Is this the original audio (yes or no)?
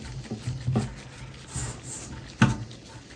yes